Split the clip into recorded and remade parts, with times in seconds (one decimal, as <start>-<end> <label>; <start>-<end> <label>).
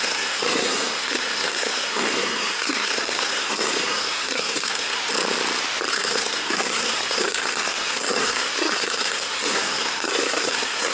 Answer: 0.0-5.0 remade; 5.0-5.9 recorded; 5.9-10.9 remade